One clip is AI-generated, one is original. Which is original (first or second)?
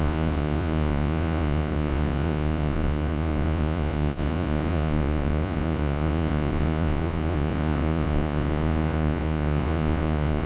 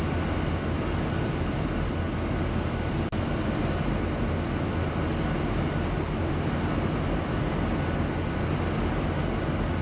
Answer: second